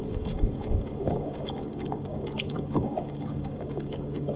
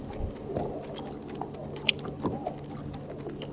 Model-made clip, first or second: first